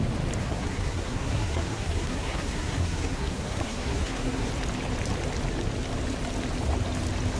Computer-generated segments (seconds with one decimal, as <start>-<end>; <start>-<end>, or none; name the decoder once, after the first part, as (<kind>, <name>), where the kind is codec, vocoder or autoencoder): 0.4-4.5 (codec, SNAC)